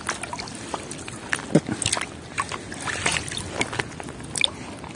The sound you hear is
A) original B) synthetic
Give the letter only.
A